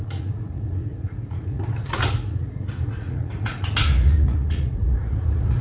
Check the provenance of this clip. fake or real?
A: fake